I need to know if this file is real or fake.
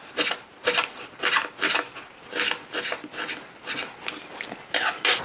real